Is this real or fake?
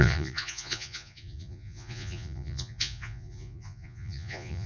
fake